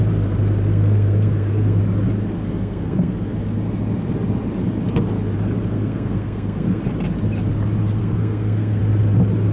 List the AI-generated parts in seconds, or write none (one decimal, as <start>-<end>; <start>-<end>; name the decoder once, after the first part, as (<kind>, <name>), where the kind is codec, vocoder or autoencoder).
0.7-1.8 (codec, SNAC); 2.4-3.1; 5.7-6.8; 8.0-8.8